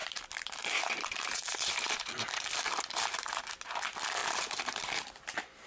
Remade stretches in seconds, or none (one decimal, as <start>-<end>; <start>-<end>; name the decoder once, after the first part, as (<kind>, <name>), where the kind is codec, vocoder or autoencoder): 0.0-3.4 (vocoder, BigVGAN v2); 4.2-5.1